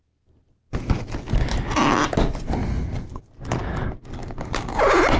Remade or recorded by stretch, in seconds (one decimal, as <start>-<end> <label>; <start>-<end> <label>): 0.0-4.2 recorded; 4.2-5.2 remade